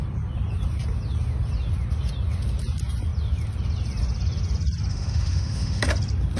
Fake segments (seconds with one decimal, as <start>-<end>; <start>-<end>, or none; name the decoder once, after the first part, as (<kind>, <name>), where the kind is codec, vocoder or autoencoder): 4.9-5.8 (autoencoder, DAC-VAE)